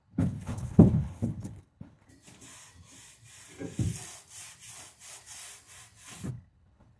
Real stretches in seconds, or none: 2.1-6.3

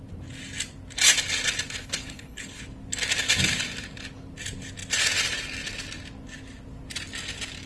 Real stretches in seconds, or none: 0.0-1.8; 2.6-7.7